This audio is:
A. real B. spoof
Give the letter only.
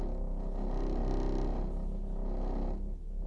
A